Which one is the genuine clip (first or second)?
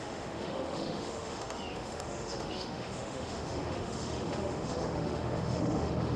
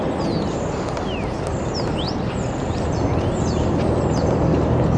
second